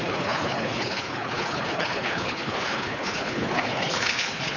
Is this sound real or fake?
fake